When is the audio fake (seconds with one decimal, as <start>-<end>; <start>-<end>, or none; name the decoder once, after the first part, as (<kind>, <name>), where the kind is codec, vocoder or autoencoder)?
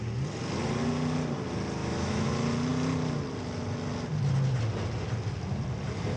1.8-2.3 (autoencoder, DAC-VAE)